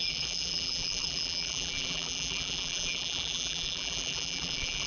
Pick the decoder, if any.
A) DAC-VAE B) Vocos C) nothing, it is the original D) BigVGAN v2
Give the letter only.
D